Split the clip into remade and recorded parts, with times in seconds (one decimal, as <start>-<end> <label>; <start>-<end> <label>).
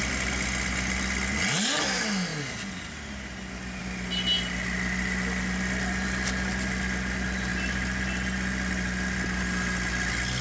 0.0-10.4 recorded